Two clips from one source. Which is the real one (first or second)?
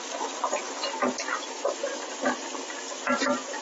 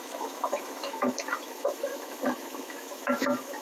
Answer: first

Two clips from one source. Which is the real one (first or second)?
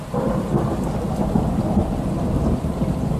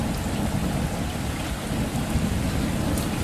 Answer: second